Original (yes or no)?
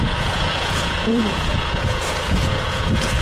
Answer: no